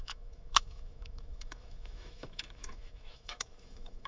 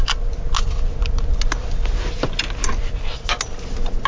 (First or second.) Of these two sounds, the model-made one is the first